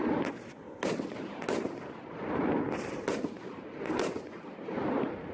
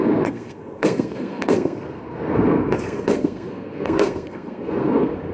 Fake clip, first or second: second